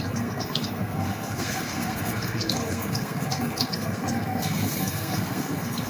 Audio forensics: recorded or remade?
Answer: remade